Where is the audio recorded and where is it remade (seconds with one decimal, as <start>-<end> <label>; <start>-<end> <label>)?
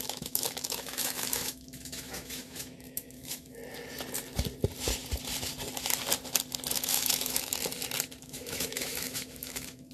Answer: 0.0-3.6 remade; 3.6-6.7 recorded; 6.7-7.5 remade; 7.5-8.2 recorded; 8.2-9.9 remade